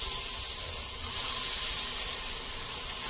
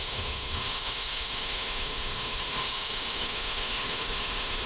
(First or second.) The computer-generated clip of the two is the second